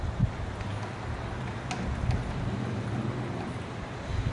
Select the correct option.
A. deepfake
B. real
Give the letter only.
B